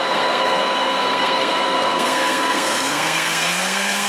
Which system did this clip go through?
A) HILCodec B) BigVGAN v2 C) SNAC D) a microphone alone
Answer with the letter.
C